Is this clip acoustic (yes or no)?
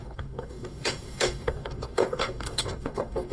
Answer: no